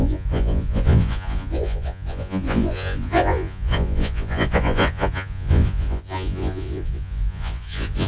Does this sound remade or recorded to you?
remade